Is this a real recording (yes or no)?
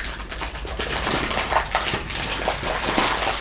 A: no